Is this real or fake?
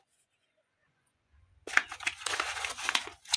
fake